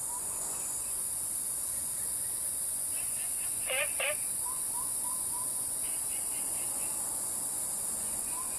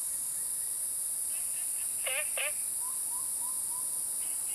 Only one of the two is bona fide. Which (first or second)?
second